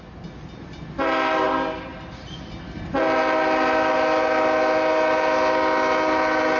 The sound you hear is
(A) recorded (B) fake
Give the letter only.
A